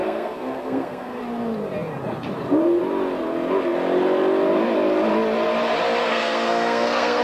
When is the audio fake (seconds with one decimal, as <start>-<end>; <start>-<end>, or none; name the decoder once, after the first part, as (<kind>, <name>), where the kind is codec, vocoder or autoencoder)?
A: 0.0-1.2 (codec, SNAC); 6.0-7.2